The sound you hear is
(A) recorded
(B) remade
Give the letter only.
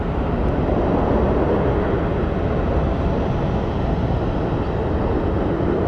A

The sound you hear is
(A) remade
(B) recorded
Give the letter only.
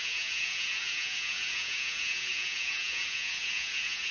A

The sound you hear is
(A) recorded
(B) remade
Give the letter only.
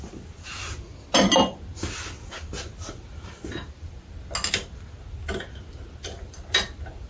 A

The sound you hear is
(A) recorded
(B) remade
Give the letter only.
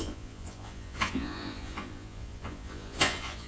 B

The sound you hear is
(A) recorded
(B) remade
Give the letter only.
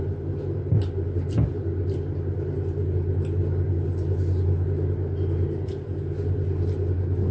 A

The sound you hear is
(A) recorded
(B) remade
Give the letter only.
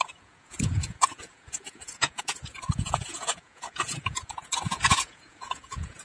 B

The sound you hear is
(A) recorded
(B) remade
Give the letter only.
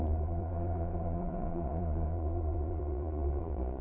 B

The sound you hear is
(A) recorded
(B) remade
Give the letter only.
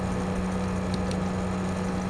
A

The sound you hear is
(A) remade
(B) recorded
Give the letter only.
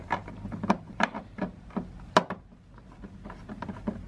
B